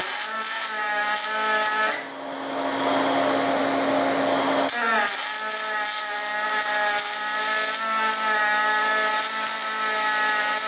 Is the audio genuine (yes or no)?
yes